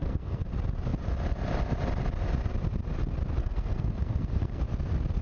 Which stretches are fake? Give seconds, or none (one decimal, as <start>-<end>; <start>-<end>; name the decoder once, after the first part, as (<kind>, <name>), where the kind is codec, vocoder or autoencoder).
0.0-0.5 (codec, SNAC); 3.4-4.6